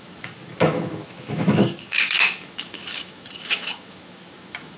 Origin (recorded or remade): remade